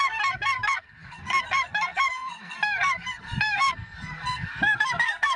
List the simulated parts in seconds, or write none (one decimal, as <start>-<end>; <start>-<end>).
0.0-5.4